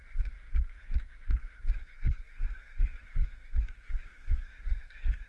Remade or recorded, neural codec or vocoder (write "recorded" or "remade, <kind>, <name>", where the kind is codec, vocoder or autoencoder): remade, codec, SNAC